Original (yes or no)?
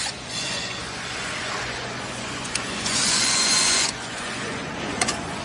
no